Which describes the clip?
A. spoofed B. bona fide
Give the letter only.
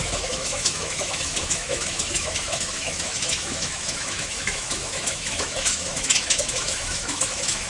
A